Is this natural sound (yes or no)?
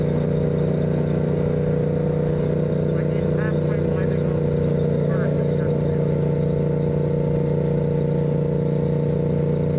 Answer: yes